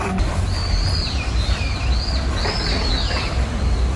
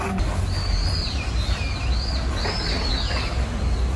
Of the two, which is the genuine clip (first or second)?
second